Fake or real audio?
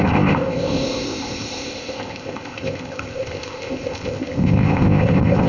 fake